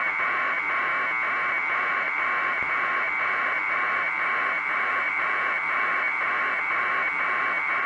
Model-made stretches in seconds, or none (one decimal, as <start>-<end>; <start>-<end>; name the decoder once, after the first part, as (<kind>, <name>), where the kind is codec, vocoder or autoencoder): 0.0-0.9 (vocoder, Vocos); 1.5-7.9